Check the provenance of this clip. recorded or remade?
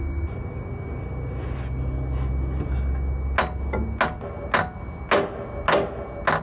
recorded